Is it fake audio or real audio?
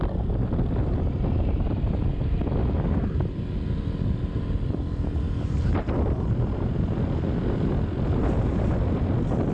real